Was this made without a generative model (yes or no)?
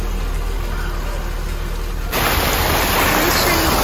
yes